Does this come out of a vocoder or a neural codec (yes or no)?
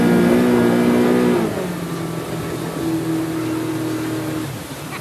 no